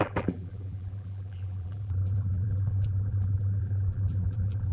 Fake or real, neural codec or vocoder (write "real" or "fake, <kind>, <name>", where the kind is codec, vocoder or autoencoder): fake, vocoder, BigVGAN v2